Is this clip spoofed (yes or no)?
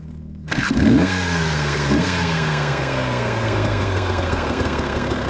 yes